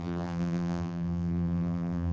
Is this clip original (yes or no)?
no